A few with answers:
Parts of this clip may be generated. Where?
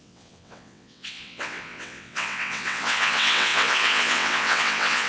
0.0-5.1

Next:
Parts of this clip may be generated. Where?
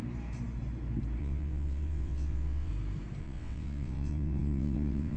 1.2-2.7; 3.2-5.2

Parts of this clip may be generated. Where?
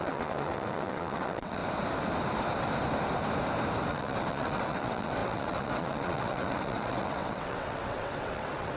0.0-1.6; 3.9-8.8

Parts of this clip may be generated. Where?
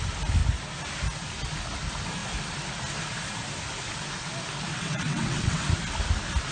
4.7-5.7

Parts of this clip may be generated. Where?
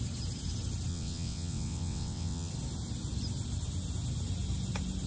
0.9-2.5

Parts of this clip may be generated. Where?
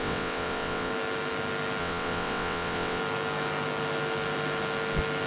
0.0-0.9; 1.8-3.0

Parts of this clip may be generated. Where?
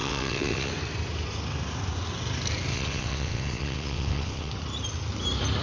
0.0-0.7; 2.7-4.5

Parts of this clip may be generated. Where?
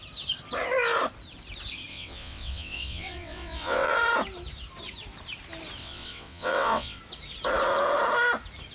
1.9-3.9; 5.8-7.0